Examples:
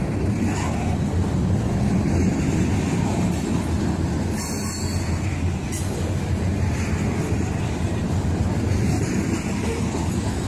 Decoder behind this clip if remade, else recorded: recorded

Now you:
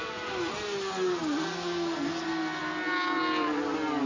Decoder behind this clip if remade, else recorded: recorded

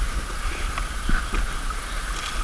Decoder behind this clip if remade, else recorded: remade, vocoder, BigVGAN v2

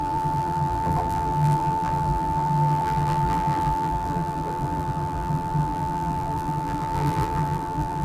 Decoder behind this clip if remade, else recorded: remade, vocoder, BigVGAN v2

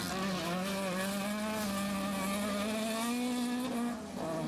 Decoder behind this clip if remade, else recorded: recorded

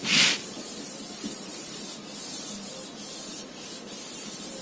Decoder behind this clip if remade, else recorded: remade, vocoder, BigVGAN v2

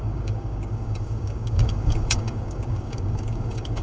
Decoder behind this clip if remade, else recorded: remade, codec, DAC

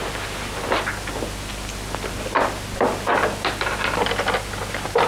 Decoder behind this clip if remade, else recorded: recorded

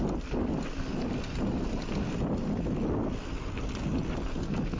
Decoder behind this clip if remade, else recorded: recorded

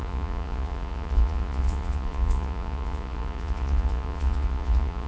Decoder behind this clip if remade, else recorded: remade, vocoder, Vocos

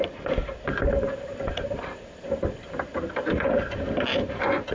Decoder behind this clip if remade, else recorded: remade, vocoder, BigVGAN v2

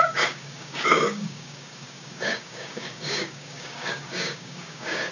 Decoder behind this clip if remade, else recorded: remade, codec, DAC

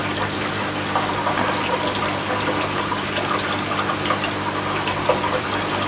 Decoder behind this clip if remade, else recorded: remade, vocoder, BigVGAN v2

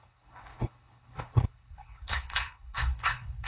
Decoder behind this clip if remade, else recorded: remade, codec, HILCodec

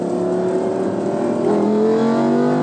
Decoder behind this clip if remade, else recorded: recorded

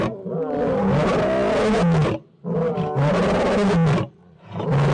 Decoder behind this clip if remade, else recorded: recorded